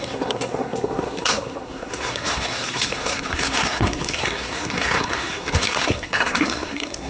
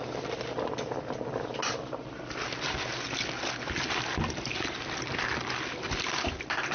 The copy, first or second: first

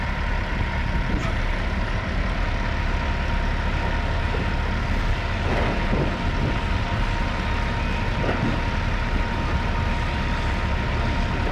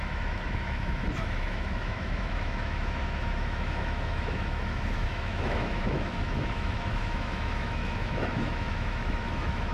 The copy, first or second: second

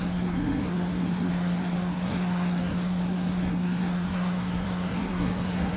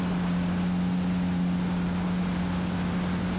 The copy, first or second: first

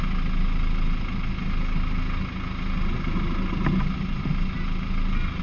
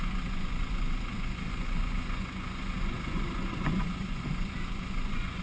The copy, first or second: second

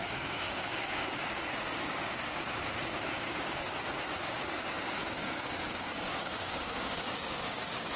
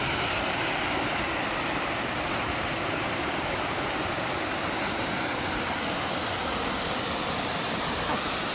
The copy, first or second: first